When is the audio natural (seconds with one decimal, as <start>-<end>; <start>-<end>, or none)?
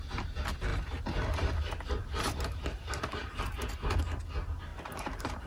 0.0-0.7; 3.4-4.7